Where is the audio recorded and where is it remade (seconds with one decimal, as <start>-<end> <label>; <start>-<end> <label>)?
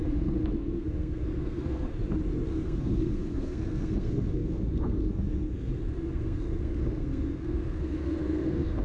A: 0.0-1.9 remade; 1.9-2.5 recorded; 2.5-8.8 remade